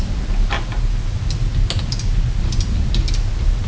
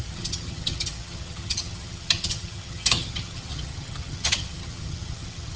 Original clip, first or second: first